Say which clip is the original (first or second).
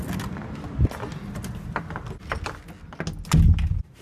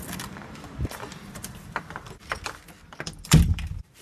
first